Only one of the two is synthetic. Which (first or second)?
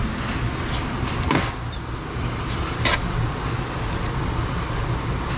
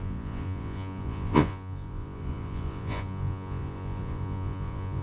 second